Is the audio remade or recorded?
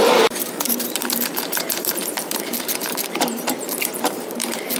remade